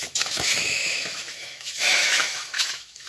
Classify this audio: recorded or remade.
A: remade